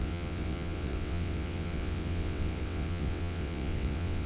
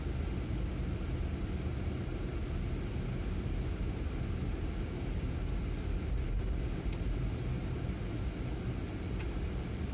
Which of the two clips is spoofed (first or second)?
first